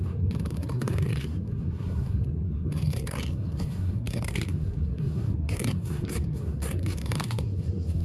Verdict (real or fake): fake